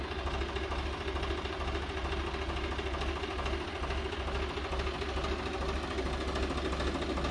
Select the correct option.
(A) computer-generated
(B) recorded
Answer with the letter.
B